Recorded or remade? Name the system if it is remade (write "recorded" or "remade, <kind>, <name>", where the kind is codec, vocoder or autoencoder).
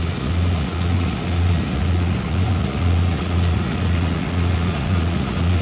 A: remade, vocoder, Vocos